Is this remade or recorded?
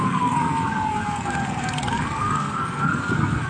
remade